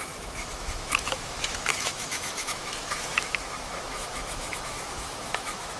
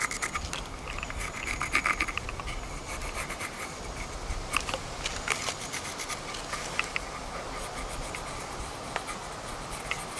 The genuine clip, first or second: second